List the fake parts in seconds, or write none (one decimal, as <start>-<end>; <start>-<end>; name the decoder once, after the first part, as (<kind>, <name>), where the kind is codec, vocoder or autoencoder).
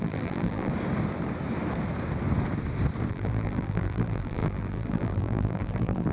0.0-0.7 (vocoder, BigVGAN v2); 3.1-6.1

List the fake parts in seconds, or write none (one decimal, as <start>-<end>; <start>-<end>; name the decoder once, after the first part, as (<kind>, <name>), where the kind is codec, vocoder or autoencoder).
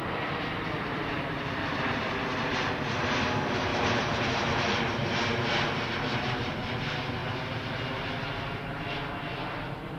0.0-7.2 (vocoder, BigVGAN v2); 8.3-10.0